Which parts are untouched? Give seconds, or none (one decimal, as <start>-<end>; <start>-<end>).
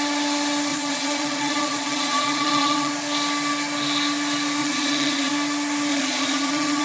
0.0-0.7; 2.9-4.6; 5.3-5.9